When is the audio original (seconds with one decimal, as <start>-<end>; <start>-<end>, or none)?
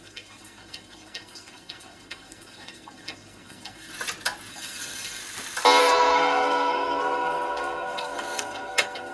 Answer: 3.9-4.5; 5.2-5.8